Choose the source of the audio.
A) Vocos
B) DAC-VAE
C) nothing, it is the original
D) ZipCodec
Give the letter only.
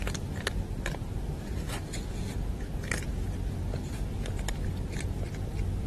C